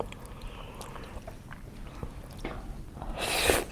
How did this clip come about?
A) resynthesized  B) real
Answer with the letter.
B